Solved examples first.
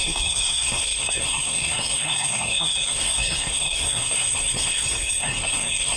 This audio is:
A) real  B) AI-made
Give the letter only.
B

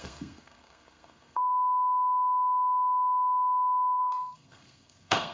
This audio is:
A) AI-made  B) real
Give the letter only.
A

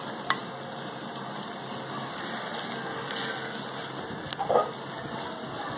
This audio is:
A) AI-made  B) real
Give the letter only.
B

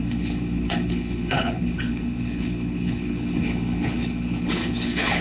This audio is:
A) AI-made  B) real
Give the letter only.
A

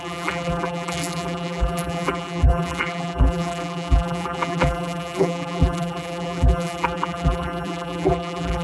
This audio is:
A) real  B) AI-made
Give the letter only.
B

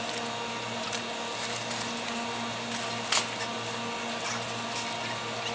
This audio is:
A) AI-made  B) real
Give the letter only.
B